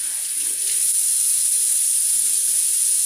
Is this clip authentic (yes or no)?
yes